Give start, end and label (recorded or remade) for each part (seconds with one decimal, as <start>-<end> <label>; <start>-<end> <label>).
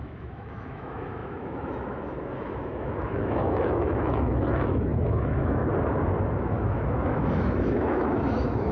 0.0-5.6 remade; 5.6-6.3 recorded; 6.3-8.7 remade